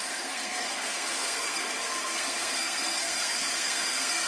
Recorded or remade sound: remade